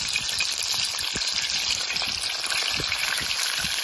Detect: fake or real real